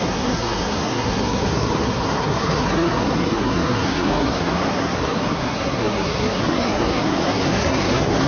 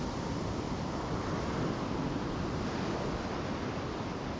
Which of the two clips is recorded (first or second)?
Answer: second